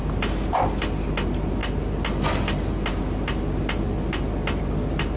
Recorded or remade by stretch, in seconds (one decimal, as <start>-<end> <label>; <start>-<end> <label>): 0.0-5.2 recorded